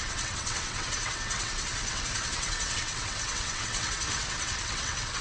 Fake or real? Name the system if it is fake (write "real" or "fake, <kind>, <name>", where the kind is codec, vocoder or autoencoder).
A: fake, vocoder, WaveNeXt